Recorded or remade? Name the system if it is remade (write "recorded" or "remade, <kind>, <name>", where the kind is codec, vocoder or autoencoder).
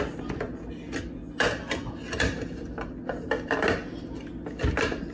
recorded